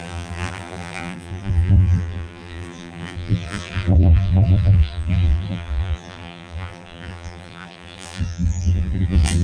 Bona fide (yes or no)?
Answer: no